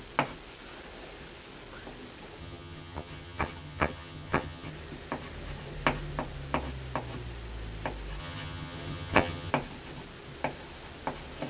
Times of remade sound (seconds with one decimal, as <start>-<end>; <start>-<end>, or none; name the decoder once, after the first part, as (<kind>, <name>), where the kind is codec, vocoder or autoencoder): 2.4-4.7 (vocoder, HiFi-GAN); 8.2-9.5